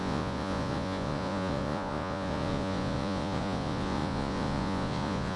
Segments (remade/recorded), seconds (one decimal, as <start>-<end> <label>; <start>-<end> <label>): 0.0-5.4 remade